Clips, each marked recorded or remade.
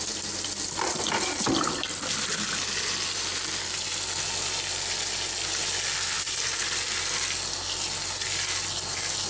recorded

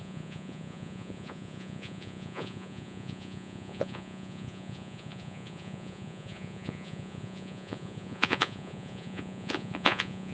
remade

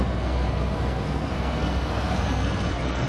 remade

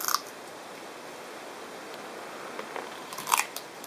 recorded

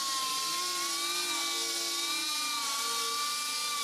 recorded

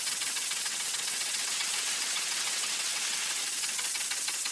remade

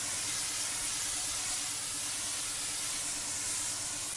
recorded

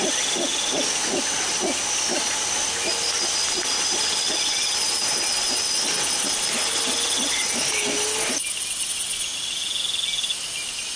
recorded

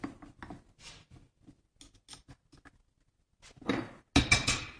recorded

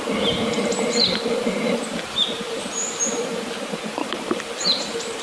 remade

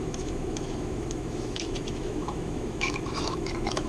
remade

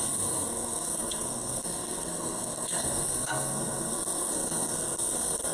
remade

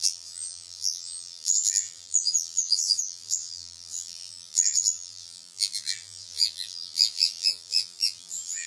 remade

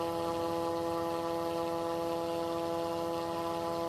recorded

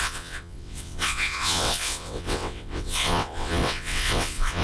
remade